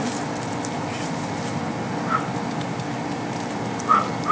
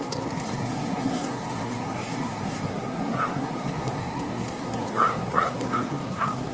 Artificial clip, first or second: second